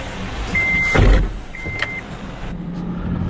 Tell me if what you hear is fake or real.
real